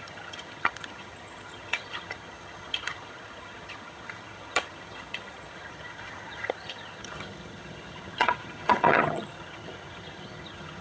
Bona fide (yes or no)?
no